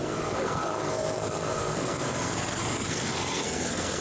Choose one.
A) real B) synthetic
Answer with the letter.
B